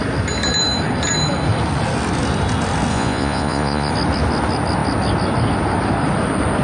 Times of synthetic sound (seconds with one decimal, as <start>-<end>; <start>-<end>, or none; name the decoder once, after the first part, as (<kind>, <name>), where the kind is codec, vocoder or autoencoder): 2.9-3.9 (vocoder, Vocos)